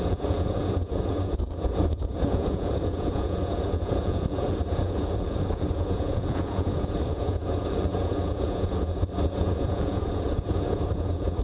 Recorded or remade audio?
remade